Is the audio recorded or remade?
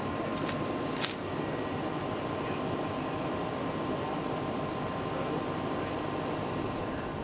recorded